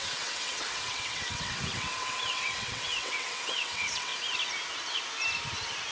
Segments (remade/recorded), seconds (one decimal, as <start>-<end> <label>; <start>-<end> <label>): 0.0-4.1 remade; 4.1-5.9 recorded